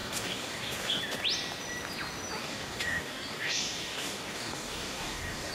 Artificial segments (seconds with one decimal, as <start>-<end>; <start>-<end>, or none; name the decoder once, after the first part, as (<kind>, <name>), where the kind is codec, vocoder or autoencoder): 0.0-1.0 (codec, DAC); 2.4-5.5